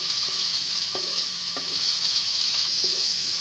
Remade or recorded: remade